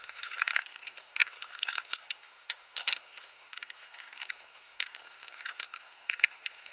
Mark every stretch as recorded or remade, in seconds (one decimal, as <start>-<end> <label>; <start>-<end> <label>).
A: 0.0-6.7 remade